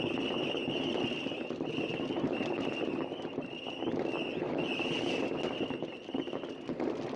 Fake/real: real